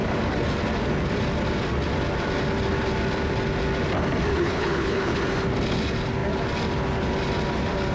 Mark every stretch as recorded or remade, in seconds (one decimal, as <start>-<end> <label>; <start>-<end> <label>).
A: 0.0-4.3 recorded; 4.3-5.2 remade; 5.2-7.9 recorded